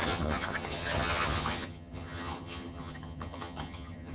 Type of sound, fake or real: fake